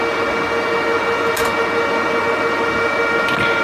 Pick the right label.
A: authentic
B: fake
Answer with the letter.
A